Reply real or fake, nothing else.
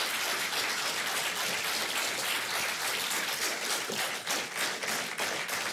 real